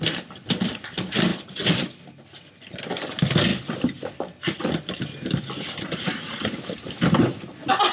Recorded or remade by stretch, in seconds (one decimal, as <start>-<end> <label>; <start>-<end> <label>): 0.0-3.5 recorded; 3.5-7.2 remade; 7.2-7.9 recorded